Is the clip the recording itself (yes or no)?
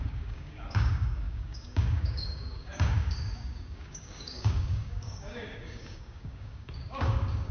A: no